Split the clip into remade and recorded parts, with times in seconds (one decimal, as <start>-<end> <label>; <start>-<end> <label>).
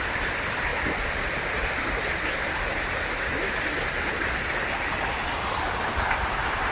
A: 0.0-6.7 recorded